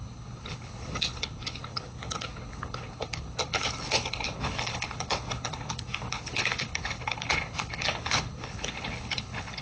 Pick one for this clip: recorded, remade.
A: remade